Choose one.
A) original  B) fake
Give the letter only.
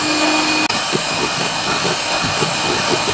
A